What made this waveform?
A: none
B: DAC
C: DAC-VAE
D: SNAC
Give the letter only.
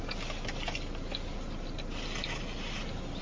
A